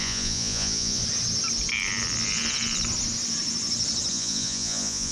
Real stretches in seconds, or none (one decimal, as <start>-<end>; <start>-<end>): 1.0-4.1